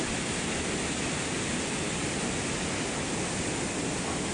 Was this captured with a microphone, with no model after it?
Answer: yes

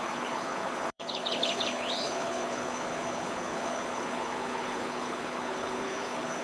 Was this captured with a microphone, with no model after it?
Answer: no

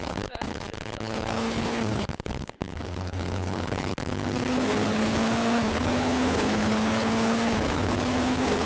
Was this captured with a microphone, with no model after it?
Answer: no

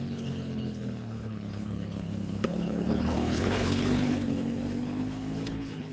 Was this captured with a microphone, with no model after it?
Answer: no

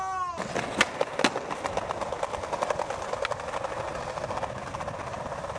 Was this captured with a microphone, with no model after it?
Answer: yes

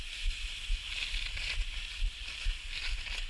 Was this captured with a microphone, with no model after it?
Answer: yes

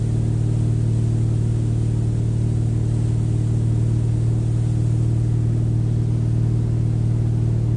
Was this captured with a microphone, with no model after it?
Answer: yes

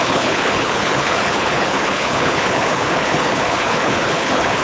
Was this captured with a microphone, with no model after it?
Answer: no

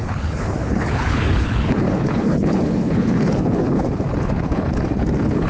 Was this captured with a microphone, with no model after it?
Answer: no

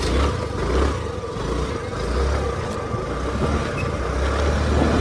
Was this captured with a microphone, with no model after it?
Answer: yes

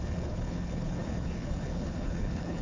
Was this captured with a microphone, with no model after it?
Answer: no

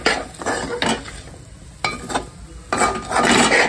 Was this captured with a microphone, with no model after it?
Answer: yes